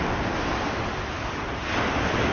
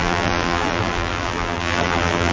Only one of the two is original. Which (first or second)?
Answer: first